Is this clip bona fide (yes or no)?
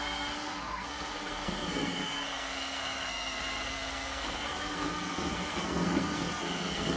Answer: no